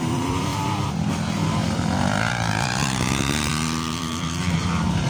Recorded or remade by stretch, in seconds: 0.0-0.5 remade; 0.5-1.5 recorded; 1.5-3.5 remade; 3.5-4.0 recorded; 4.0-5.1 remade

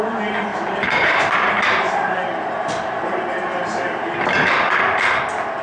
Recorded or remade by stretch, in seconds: 0.0-0.5 recorded; 0.5-3.9 remade; 3.9-5.6 recorded

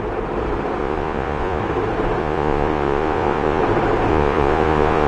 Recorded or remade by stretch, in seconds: 0.0-0.8 recorded; 0.8-1.6 remade; 1.6-2.2 recorded; 2.2-3.6 remade; 3.6-4.1 recorded; 4.1-5.1 remade

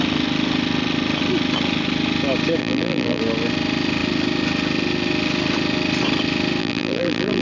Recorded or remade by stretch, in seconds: 0.0-2.6 recorded; 2.6-3.2 remade; 3.2-6.6 recorded; 6.6-7.4 remade